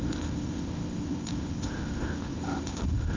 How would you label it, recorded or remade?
remade